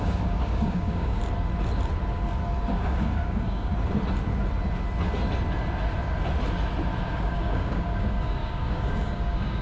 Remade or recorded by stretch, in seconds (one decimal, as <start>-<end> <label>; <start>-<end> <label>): 0.0-1.2 remade; 1.2-2.7 recorded; 2.7-3.7 remade; 3.7-7.0 recorded; 7.0-9.6 remade